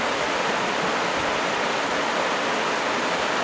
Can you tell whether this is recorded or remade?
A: recorded